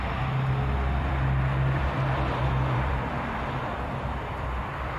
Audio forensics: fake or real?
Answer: fake